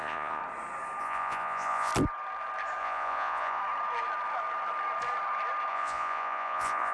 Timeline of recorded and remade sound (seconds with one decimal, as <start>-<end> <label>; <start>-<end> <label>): 0.0-0.4 remade; 0.4-1.0 recorded; 1.0-1.9 remade; 1.9-2.8 recorded; 2.8-3.6 remade; 3.6-5.7 recorded; 5.7-6.9 remade